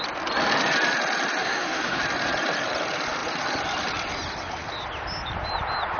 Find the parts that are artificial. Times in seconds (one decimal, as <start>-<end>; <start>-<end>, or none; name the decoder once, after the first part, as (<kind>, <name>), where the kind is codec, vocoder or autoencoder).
1.4-2.0 (autoencoder, DAC-VAE)